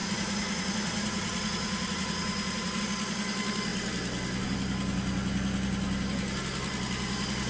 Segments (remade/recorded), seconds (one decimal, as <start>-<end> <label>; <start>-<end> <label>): 0.0-2.8 remade; 2.8-7.5 recorded